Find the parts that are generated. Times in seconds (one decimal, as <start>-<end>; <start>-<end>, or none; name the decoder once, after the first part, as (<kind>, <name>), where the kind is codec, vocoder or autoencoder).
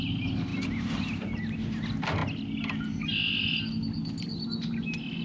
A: none